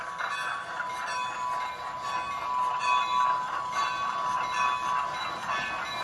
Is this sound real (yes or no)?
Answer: yes